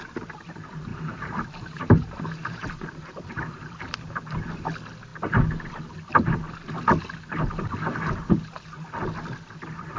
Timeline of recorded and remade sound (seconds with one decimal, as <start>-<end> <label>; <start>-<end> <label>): 0.0-0.9 recorded; 0.9-3.8 remade; 3.8-10.0 recorded